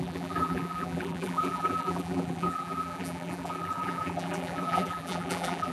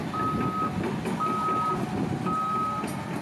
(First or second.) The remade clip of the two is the first